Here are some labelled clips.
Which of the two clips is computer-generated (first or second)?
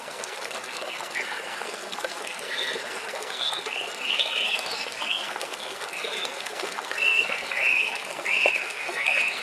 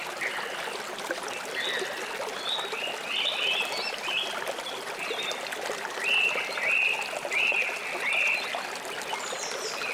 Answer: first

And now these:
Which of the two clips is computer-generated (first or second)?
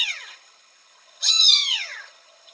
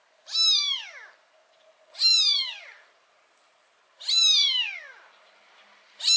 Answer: first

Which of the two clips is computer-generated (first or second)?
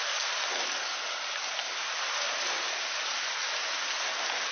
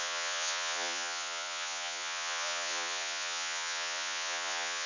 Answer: second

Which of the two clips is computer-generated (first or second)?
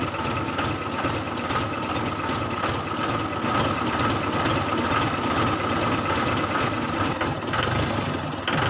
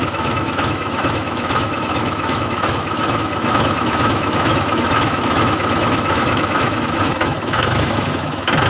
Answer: second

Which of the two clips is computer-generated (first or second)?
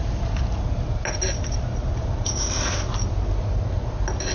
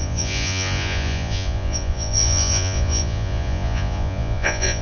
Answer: second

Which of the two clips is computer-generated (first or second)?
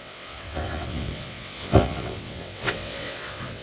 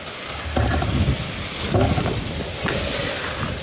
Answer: first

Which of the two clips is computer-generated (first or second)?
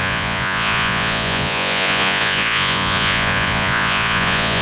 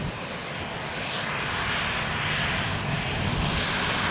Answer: first